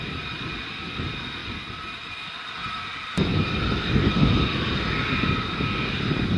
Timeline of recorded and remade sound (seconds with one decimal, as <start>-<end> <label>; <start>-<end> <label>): 0.0-2.6 recorded; 2.6-4.1 remade; 4.1-6.4 recorded